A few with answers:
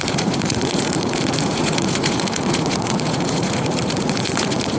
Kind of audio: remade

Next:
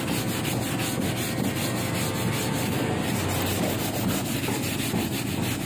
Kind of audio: recorded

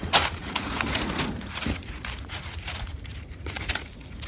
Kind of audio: remade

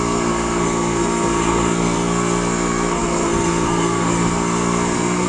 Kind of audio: remade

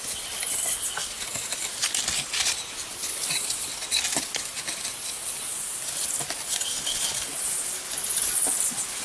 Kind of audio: recorded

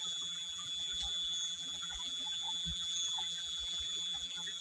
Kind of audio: remade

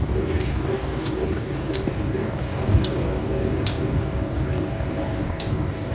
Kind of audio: remade